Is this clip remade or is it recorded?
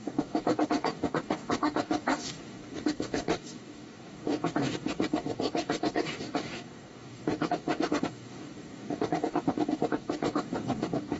remade